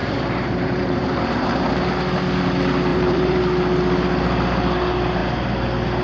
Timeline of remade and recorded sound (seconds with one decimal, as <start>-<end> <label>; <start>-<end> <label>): 0.0-1.6 remade; 1.6-2.9 recorded; 2.9-3.4 remade; 3.4-6.0 recorded